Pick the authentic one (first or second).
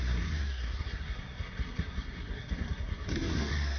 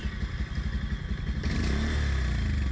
second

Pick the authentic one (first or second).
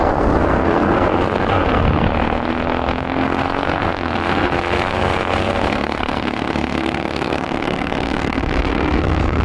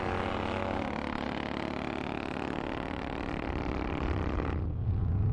second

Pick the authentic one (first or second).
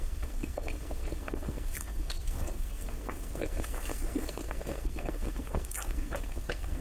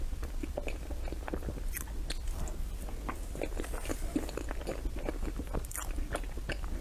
second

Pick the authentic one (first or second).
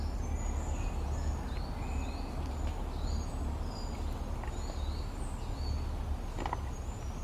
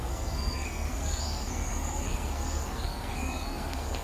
first